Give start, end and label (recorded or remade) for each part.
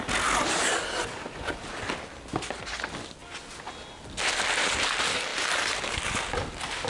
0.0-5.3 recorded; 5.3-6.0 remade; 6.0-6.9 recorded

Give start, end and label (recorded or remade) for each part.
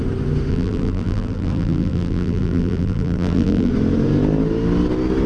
0.0-0.5 recorded; 0.5-3.7 remade; 3.7-5.3 recorded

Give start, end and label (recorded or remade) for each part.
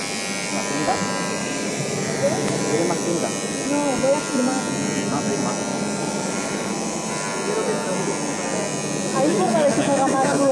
0.0-1.4 recorded; 1.4-2.6 remade; 2.6-5.7 recorded; 5.7-7.1 remade; 7.1-10.5 recorded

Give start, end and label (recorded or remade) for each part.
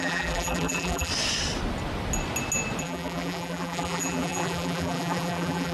0.0-1.1 remade; 1.1-2.8 recorded; 2.8-5.7 remade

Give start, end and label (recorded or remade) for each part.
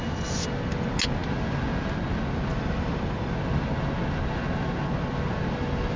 0.0-2.5 recorded; 2.5-3.3 remade; 3.3-6.0 recorded